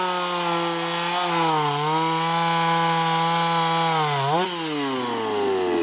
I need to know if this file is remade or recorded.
recorded